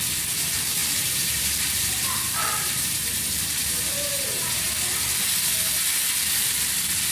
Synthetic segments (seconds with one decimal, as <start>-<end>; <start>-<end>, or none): 0.8-4.7